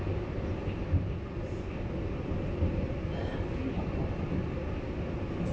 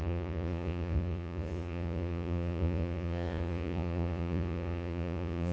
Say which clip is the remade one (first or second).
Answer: second